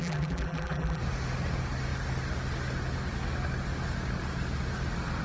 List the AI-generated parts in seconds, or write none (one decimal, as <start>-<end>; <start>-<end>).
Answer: 0.0-1.0